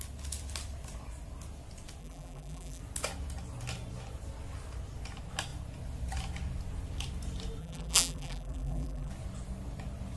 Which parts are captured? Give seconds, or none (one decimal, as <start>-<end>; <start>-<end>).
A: 0.0-2.0; 2.8-7.6; 9.1-10.2